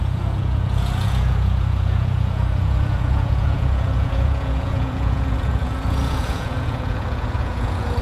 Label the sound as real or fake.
fake